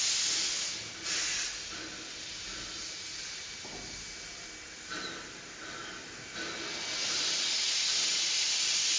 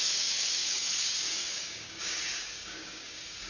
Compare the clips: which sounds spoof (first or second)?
second